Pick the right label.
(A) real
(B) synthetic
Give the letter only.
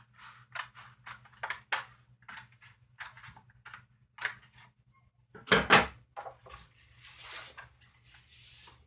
A